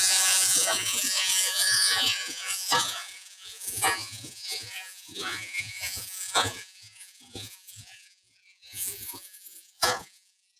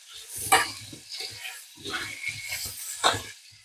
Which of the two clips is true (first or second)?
second